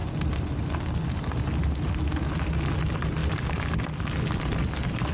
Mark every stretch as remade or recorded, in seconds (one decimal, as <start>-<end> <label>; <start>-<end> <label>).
0.0-5.1 recorded